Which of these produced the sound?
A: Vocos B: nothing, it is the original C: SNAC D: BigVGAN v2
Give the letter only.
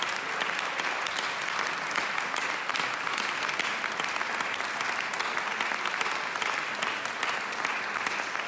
B